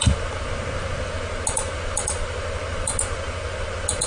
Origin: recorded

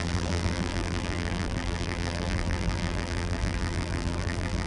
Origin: remade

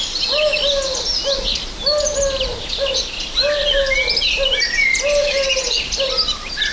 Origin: recorded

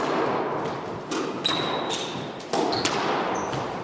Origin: recorded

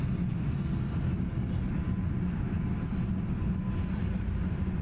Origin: recorded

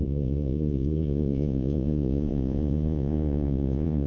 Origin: remade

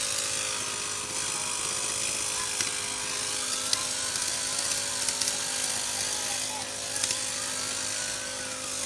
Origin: recorded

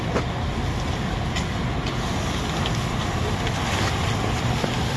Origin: recorded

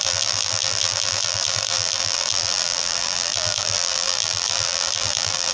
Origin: remade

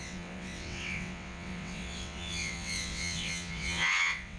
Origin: remade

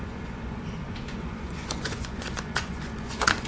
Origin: remade